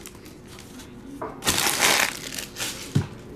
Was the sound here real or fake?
real